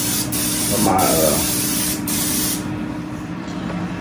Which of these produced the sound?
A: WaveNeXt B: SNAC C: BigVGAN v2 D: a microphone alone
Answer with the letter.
C